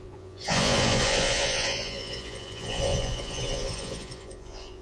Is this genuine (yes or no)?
no